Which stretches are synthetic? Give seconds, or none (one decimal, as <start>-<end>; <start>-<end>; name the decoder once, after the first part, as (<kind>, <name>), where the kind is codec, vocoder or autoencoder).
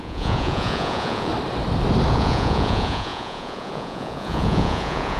0.0-1.3 (vocoder, Vocos); 2.1-5.2